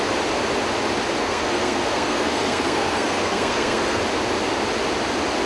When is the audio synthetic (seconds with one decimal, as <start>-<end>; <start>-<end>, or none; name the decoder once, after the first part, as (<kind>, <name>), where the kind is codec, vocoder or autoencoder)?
1.2-4.0 (codec, SNAC)